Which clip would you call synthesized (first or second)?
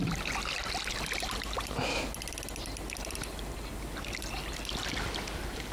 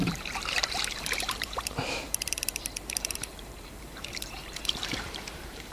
second